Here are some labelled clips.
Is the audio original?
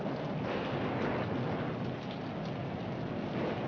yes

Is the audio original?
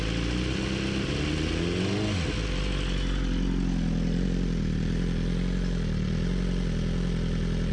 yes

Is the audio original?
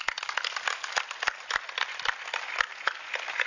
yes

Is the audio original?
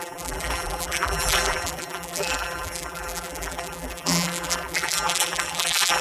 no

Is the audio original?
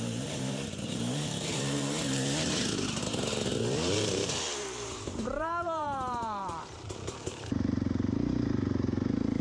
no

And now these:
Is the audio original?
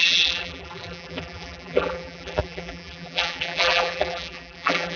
no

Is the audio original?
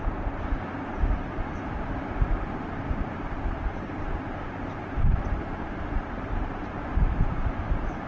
no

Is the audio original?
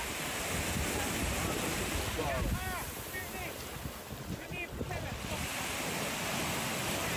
yes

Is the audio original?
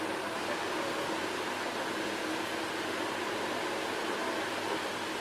yes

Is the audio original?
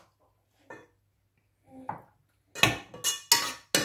yes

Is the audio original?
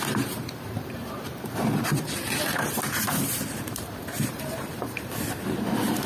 no